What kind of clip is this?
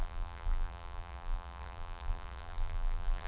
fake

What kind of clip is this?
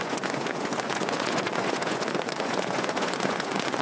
fake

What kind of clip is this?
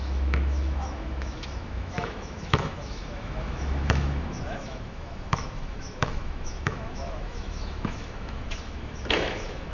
fake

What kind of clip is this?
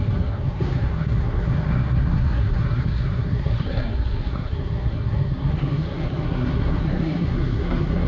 fake